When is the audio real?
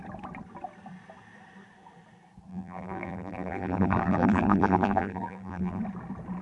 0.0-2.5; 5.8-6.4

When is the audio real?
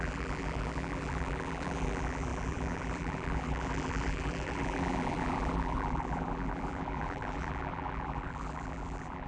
none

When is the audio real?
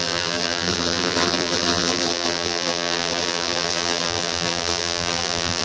none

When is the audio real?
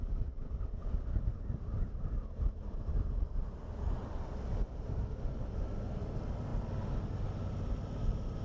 0.0-8.4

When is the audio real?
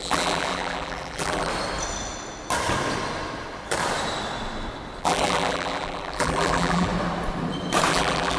1.5-5.0; 6.9-7.9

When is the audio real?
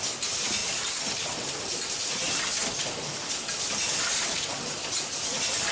0.0-0.6; 2.2-5.7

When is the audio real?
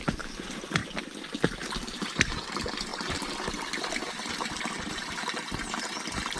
none